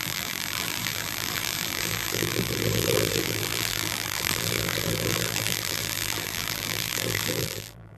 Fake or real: fake